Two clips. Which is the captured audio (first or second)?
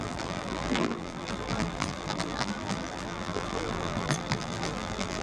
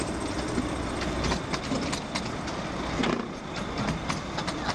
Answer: second